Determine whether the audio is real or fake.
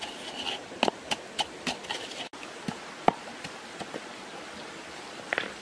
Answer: real